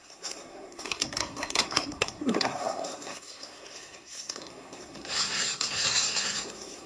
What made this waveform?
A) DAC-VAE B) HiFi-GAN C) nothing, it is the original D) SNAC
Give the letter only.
D